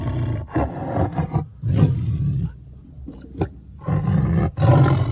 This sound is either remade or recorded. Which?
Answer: recorded